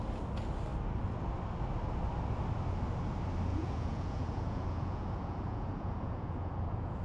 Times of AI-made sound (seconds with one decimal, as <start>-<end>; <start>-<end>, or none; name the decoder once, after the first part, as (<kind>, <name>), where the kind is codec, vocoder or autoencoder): 3.5-7.0 (vocoder, Vocos)

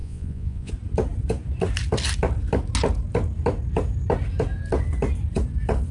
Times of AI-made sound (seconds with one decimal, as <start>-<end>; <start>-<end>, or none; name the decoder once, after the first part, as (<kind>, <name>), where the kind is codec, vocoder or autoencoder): 0.0-0.7 (vocoder, Vocos)

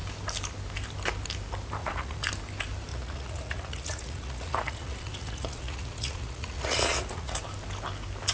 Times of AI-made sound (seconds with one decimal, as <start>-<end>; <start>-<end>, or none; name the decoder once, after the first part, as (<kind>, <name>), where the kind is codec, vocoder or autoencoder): 1.8-2.3 (vocoder, Vocos); 2.9-7.4

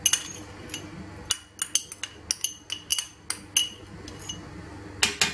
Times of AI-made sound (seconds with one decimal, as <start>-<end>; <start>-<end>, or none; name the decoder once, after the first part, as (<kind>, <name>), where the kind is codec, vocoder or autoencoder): none

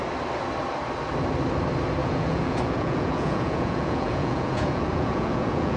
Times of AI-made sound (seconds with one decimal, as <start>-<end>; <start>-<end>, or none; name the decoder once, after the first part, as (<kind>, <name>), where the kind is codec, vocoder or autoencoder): 2.0-5.8 (vocoder, Vocos)

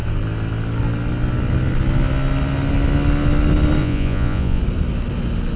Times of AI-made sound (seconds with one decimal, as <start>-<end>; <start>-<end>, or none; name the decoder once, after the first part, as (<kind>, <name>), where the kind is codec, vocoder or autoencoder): 3.8-4.6 (vocoder, Vocos)

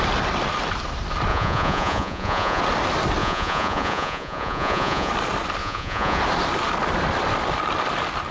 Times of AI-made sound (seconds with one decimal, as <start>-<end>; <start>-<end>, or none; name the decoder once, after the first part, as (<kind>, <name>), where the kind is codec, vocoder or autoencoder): 1.3-2.6 (vocoder, Vocos); 3.2-5.1; 5.6-6.2

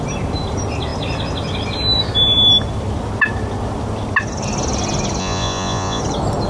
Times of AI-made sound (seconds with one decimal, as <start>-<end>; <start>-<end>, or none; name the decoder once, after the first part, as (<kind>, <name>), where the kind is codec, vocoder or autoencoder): 5.2-6.0 (vocoder, Vocos)